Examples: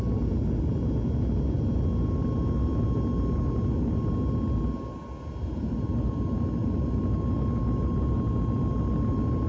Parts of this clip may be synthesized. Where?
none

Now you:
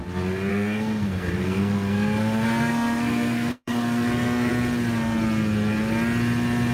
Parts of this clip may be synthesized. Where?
0.5-4.5 (codec, SNAC)

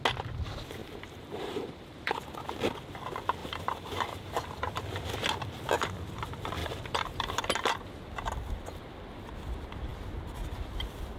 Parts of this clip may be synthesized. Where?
0.8-2.2 (vocoder, BigVGAN v2); 3.4-4.6; 6.6-7.4

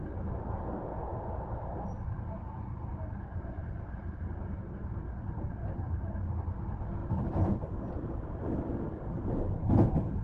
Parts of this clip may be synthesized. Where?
none

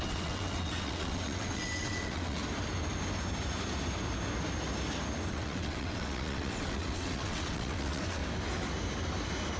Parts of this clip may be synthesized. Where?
0.0-2.4 (vocoder, WaveNeXt); 5.3-8.2

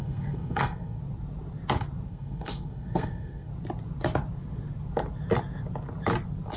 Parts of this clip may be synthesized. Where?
0.0-1.0 (codec, SNAC); 2.1-3.5

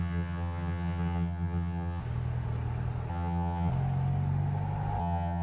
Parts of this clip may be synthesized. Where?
0.0-2.0 (vocoder, HiFi-GAN); 3.1-3.7; 5.0-5.4